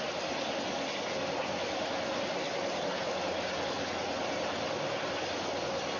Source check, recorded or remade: recorded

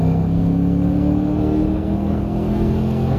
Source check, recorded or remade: remade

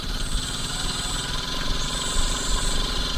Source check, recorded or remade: remade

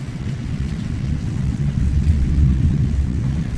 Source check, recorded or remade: remade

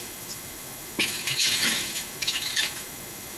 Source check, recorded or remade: remade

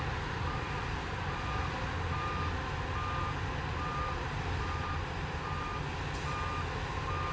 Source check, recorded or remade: recorded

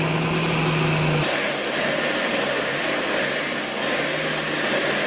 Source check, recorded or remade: recorded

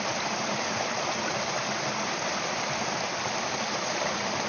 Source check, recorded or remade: recorded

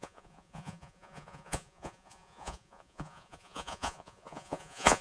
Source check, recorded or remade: remade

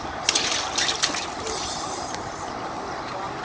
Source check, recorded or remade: recorded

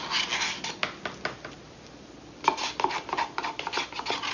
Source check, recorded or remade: recorded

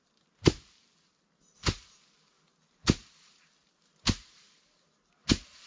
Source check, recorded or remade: recorded